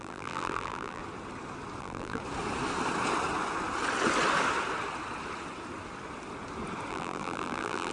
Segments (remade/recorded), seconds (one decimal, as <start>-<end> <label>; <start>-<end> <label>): 0.0-1.0 remade; 1.0-1.8 recorded; 1.8-2.2 remade; 2.2-6.9 recorded; 6.9-7.9 remade